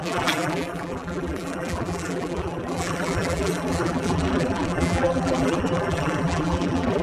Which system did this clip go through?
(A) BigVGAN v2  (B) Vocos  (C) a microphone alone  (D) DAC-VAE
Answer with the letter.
A